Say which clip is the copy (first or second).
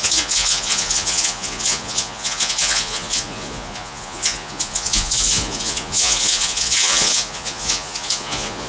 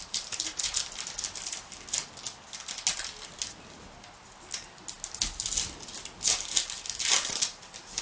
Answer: first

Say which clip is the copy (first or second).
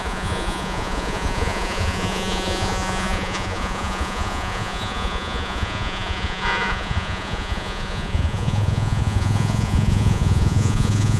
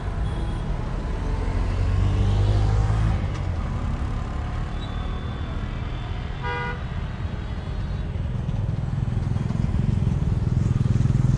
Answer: first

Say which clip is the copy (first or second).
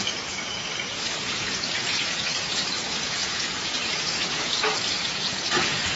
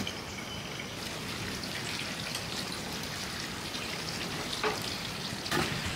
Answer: first